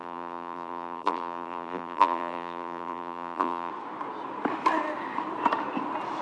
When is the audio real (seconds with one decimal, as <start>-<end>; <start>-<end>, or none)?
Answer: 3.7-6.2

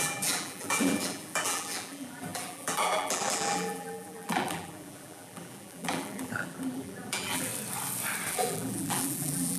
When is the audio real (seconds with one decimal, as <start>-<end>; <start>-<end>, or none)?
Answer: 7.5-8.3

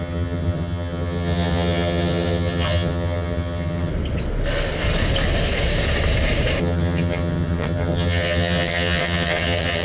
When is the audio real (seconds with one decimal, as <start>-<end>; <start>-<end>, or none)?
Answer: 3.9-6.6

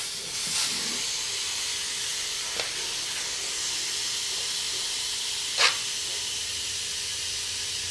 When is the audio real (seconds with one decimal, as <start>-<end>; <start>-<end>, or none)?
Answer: 0.0-7.9

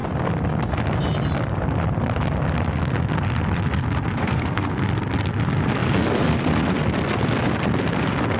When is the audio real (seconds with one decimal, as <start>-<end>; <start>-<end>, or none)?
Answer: 0.0-4.2; 4.7-8.4

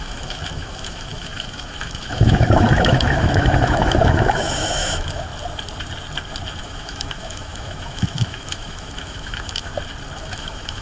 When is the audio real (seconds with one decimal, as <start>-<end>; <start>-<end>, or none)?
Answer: 5.3-6.6; 9.7-10.2

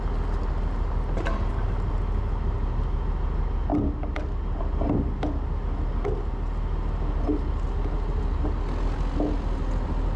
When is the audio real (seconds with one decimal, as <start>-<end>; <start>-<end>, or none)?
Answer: 0.0-10.2